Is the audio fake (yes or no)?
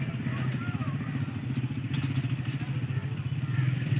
no